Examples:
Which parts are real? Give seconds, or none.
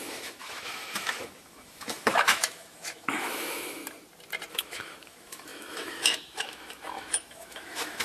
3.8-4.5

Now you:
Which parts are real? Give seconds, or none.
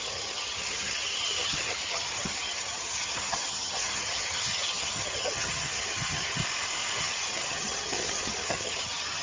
6.4-7.0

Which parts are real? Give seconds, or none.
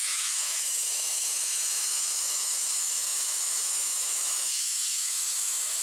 none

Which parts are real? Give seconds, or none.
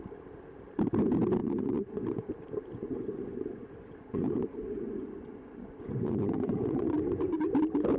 0.0-1.4; 2.3-2.8; 7.5-8.0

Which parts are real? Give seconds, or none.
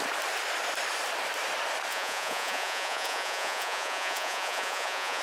0.0-1.9